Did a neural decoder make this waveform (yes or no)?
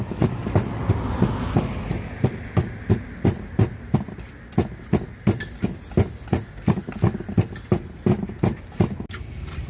no